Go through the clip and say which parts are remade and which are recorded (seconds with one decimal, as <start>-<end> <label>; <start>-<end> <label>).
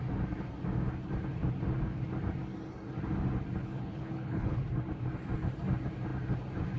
0.0-3.6 recorded; 3.6-4.6 remade; 4.6-6.8 recorded